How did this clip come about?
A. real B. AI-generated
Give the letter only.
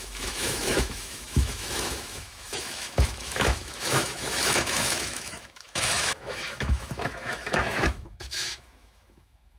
B